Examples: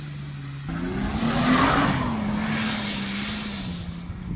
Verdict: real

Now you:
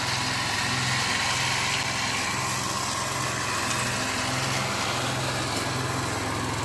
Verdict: real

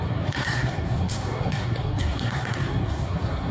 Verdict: fake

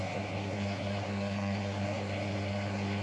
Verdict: fake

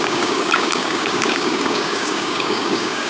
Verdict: fake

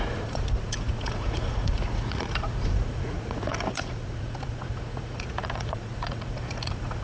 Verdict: fake